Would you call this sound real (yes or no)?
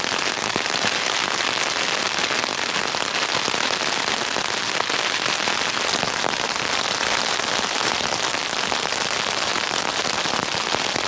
yes